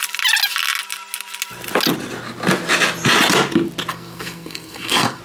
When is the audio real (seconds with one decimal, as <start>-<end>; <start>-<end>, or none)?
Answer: 0.0-3.9